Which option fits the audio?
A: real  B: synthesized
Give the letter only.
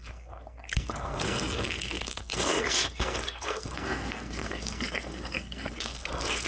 B